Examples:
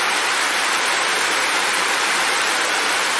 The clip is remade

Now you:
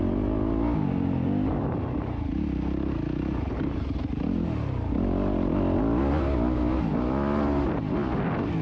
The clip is recorded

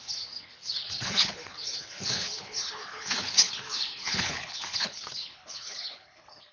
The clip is remade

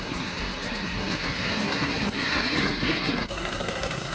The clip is remade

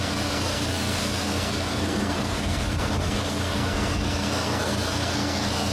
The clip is remade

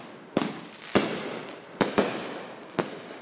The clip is remade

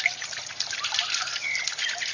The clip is recorded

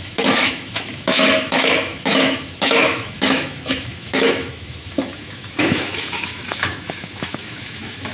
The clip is remade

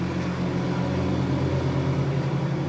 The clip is recorded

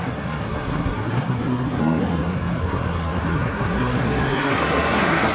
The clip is remade